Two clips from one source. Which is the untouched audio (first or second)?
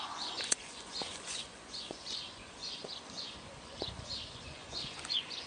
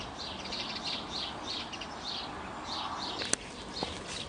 second